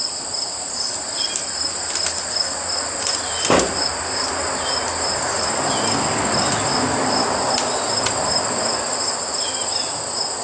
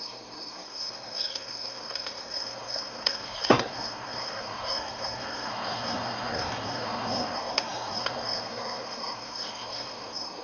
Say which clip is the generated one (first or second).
second